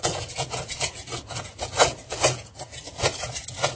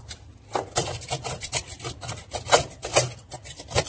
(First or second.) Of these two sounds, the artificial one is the first